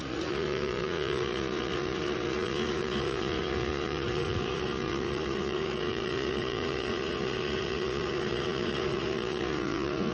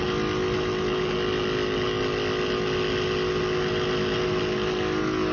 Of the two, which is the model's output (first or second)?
first